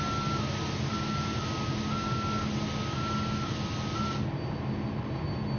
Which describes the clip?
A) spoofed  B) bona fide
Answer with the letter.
B